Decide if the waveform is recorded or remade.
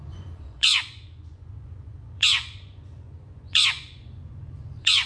remade